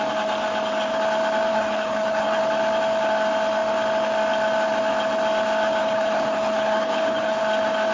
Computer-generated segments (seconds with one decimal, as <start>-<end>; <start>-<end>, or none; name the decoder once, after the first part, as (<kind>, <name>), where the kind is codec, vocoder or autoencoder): 1.5-2.4 (codec, HILCodec); 5.8-7.4